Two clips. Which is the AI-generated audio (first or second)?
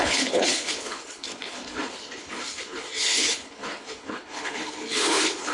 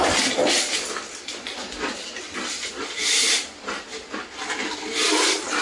first